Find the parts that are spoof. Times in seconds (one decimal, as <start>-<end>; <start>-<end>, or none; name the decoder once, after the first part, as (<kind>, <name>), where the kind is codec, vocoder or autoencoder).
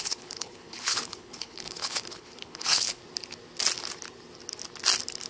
0.0-3.0 (codec, HILCodec)